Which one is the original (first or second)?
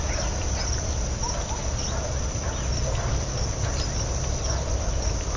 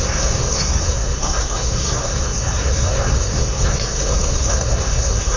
first